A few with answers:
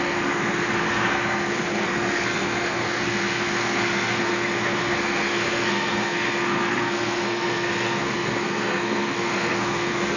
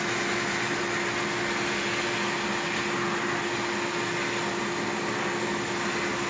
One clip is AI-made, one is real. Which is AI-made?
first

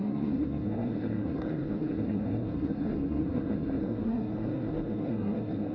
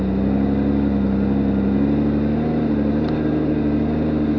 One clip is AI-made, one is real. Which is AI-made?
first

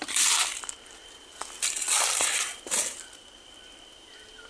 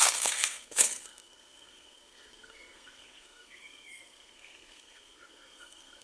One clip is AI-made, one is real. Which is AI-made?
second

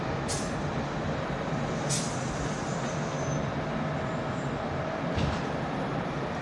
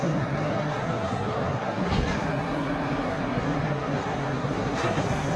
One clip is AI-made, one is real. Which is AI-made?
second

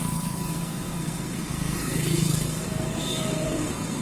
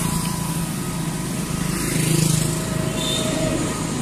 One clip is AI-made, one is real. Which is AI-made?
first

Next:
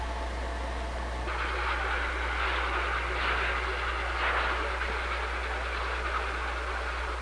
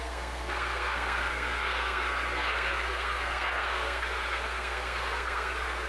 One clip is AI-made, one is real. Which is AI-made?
second